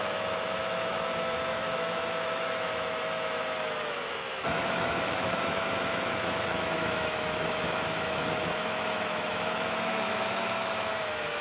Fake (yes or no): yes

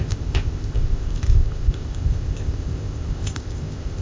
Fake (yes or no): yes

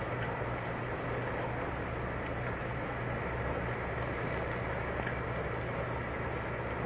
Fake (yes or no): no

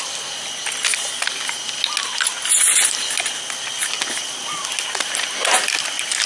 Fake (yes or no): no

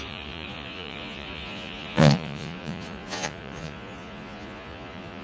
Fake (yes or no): yes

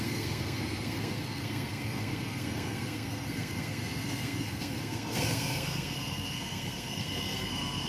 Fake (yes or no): yes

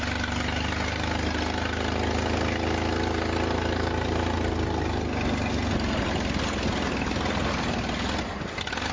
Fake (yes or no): no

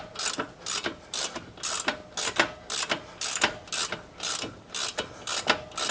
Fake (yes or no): no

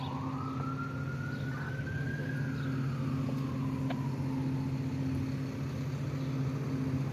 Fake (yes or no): no